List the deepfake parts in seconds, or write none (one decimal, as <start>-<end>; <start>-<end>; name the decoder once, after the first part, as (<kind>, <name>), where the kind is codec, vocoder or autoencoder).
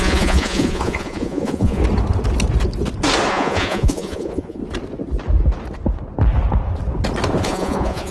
0.0-1.8 (vocoder, Vocos); 3.3-4.6; 7.4-8.1